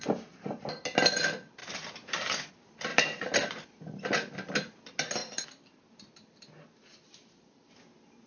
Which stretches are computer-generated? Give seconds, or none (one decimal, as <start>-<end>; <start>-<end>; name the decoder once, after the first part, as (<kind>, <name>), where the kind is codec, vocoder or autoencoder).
1.6-2.5 (vocoder, BigVGAN v2); 2.9-3.8; 5.2-7.7